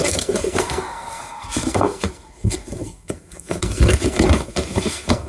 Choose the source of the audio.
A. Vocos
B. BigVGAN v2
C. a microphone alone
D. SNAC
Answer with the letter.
D